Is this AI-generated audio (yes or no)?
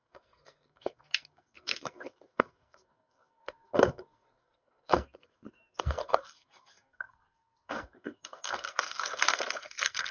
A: yes